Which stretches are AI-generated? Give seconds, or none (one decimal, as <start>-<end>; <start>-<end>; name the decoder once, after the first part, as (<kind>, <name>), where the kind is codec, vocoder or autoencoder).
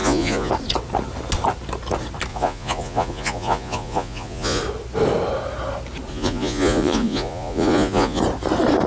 0.0-0.5 (vocoder, Vocos); 2.3-4.6; 6.1-8.2